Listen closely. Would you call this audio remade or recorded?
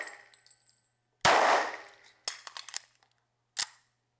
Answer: recorded